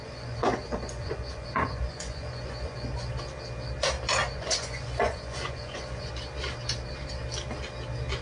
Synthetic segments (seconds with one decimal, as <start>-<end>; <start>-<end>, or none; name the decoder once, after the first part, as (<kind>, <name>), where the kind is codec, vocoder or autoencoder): 0.0-3.1 (vocoder, Vocos); 4.2-6.1